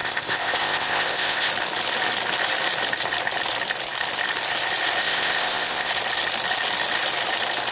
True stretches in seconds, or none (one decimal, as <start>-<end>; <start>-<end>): 1.5-5.0; 5.9-7.7